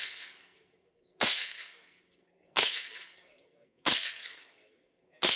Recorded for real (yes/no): no